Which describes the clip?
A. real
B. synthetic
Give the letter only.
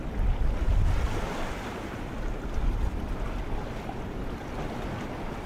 A